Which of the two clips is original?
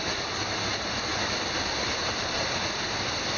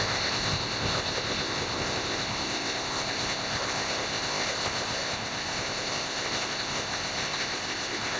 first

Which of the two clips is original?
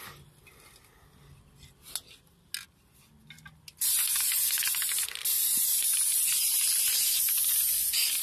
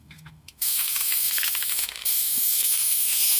first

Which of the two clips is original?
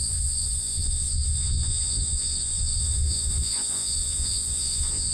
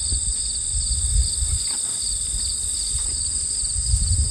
second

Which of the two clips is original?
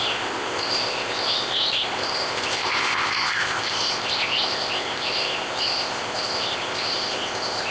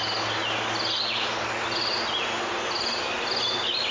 second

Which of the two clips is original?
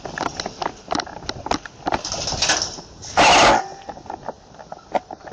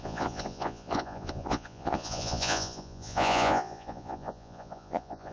first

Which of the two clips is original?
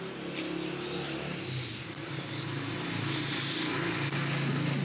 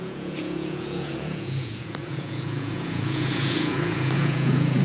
first